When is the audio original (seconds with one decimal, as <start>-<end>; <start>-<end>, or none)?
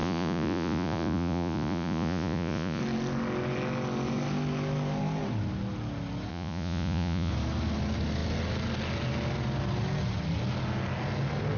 2.8-6.3; 7.3-11.6